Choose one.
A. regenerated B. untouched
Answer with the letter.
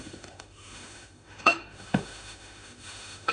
A